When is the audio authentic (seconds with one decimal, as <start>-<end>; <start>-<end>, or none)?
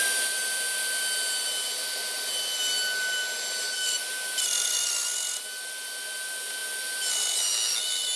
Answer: 0.0-8.2